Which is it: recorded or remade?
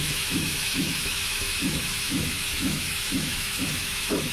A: remade